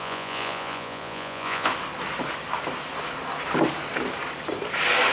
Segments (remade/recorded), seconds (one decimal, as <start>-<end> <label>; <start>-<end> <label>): 0.0-1.7 remade; 1.7-5.1 recorded